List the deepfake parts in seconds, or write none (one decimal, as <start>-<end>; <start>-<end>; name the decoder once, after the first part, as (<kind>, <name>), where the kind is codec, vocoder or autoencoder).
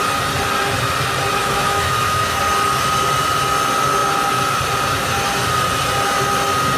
1.4-2.4 (autoencoder, DAC-VAE)